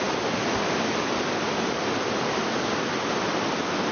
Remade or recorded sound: recorded